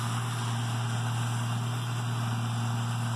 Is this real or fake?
real